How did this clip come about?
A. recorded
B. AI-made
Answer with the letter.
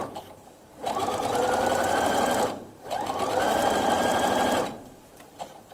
B